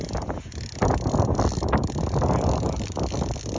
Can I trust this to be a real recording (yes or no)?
yes